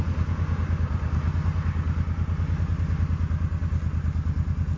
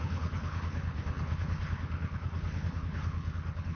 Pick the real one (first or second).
first